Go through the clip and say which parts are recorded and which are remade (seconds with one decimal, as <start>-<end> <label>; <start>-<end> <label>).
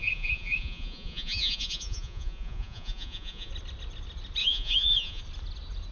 0.0-3.5 remade; 3.5-4.4 recorded; 4.4-5.2 remade; 5.2-5.9 recorded